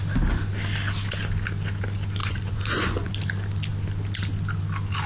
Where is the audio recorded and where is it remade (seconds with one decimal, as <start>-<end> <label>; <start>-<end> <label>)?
0.0-2.2 recorded; 2.2-3.1 remade; 3.1-5.1 recorded